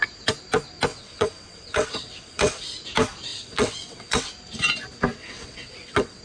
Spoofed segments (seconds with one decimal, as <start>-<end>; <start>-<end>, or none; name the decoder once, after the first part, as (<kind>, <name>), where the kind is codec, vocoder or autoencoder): 0.9-2.6 (vocoder, WaveNeXt); 3.3-4.3; 5.2-6.2